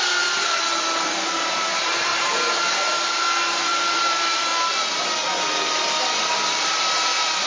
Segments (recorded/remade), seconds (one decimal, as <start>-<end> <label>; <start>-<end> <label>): 0.0-4.5 remade; 4.5-6.3 recorded; 6.3-7.5 remade